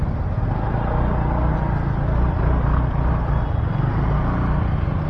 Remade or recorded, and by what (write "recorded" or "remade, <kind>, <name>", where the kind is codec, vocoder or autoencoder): recorded